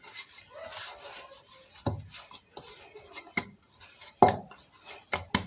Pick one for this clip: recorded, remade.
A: recorded